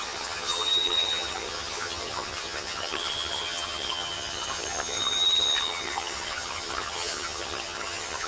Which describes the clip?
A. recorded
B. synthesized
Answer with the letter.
B